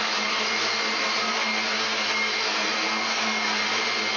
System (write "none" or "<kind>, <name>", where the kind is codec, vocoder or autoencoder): none